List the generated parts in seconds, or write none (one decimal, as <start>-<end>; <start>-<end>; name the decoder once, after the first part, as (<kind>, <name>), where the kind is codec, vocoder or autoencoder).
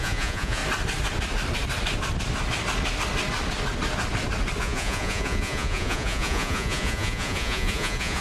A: 0.0-0.6 (vocoder, Vocos); 4.6-8.2